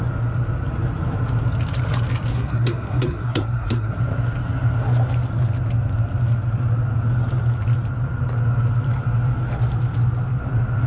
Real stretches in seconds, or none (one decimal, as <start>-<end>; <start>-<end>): 0.0-2.3; 4.0-10.9